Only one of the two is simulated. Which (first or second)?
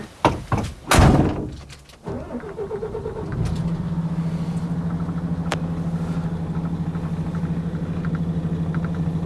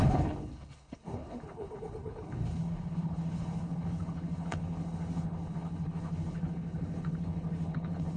second